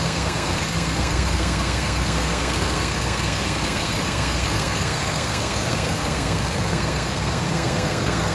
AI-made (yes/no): yes